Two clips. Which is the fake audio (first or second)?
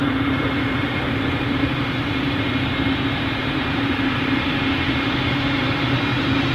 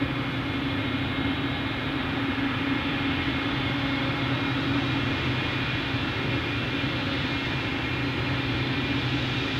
first